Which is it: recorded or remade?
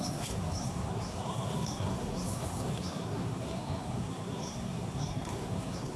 remade